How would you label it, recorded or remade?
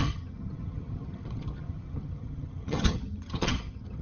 remade